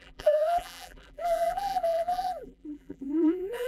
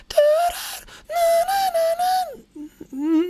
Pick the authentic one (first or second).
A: second